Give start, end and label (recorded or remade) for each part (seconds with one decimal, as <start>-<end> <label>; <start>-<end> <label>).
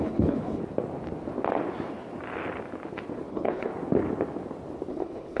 0.0-0.6 remade; 0.6-3.3 recorded; 3.3-3.7 remade; 3.7-4.9 recorded; 4.9-5.4 remade